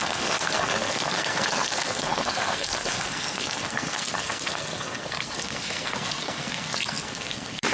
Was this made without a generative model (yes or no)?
no